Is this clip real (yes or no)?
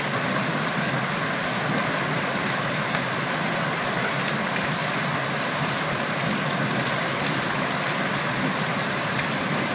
yes